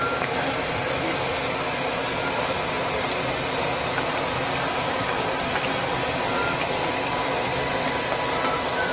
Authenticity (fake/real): real